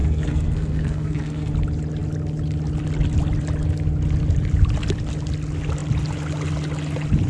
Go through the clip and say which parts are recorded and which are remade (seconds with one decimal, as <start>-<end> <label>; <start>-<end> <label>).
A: 0.0-1.5 remade; 1.5-7.3 recorded